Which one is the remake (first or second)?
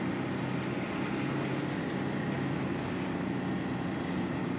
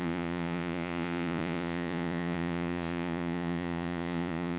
second